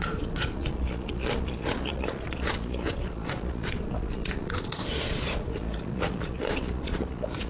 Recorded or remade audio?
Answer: remade